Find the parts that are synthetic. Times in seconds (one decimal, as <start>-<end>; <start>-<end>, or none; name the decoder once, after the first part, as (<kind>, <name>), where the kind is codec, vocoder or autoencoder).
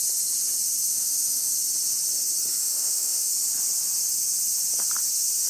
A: 0.9-1.5 (autoencoder, DAC-VAE); 2.6-3.3